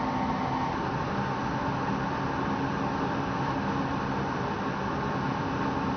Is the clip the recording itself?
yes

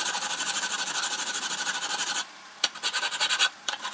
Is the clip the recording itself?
no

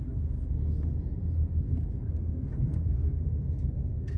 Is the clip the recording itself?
no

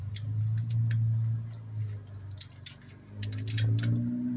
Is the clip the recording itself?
yes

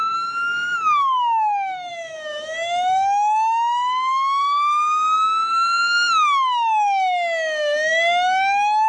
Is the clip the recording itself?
no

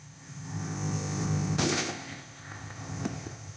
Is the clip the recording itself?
no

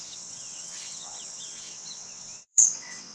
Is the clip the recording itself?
no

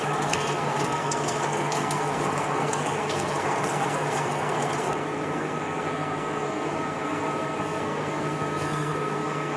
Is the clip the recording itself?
no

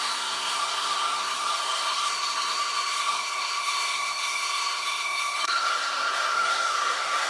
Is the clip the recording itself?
no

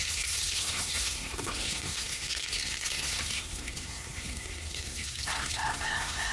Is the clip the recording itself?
no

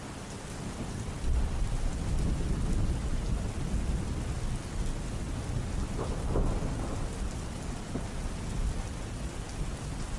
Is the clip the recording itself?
yes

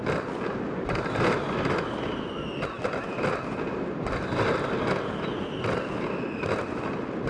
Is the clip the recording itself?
yes